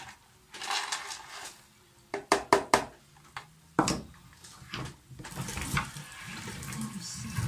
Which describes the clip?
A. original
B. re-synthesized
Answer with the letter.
A